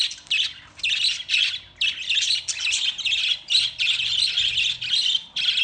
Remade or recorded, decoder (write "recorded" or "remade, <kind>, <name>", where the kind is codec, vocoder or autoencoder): recorded